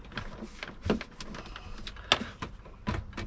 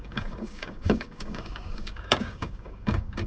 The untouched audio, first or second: first